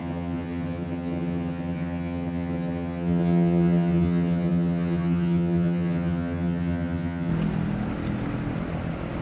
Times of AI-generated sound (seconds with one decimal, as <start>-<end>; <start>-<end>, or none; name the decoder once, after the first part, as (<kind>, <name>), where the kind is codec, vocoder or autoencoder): 0.0-7.3 (vocoder, HiFi-GAN)